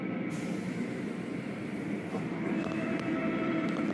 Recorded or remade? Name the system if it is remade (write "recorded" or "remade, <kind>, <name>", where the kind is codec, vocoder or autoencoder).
remade, vocoder, BigVGAN v2